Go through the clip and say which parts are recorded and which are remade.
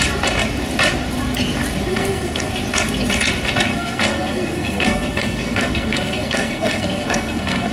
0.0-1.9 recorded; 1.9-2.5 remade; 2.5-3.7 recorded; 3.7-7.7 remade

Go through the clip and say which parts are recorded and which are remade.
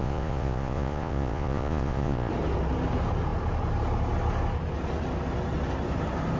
0.0-2.3 remade; 2.3-6.4 recorded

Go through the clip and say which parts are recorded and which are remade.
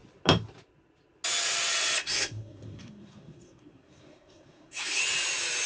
0.0-2.0 recorded; 2.0-5.0 remade; 5.0-5.7 recorded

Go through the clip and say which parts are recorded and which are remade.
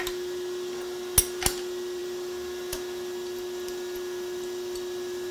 0.0-5.3 recorded